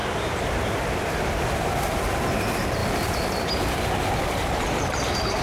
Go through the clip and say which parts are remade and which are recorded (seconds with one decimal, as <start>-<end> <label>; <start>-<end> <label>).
0.0-2.1 remade; 2.1-2.8 recorded; 2.8-5.4 remade